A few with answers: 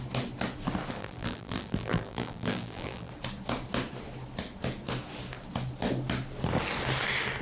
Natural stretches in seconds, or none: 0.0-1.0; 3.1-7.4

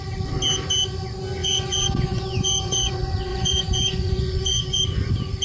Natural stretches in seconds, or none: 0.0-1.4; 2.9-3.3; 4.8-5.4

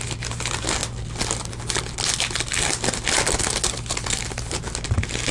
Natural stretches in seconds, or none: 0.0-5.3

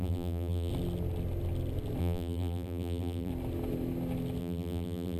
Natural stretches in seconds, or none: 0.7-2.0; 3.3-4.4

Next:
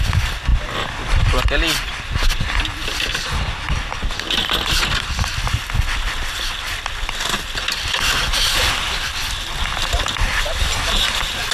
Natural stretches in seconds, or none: 0.0-11.5

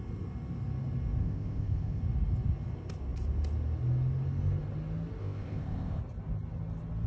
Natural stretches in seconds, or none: 0.0-1.2; 2.0-5.2; 6.0-7.1

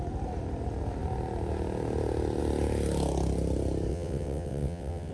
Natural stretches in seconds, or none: 0.0-3.9